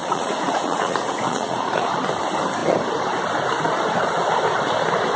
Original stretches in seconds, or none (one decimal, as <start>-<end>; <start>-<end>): 1.9-5.2